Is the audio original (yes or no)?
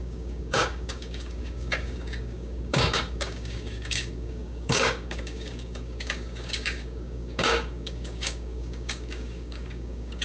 no